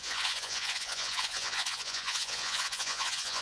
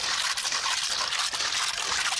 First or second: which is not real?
first